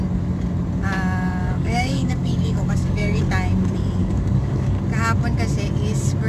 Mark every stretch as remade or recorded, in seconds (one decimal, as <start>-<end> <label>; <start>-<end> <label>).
0.0-1.4 recorded; 1.4-3.2 remade; 3.2-4.0 recorded; 4.0-4.8 remade; 4.8-6.3 recorded